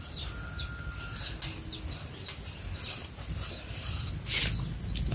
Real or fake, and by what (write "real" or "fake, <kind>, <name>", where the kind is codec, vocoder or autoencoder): real